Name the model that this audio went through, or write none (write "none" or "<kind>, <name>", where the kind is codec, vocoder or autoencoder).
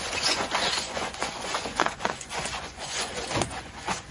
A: vocoder, Vocos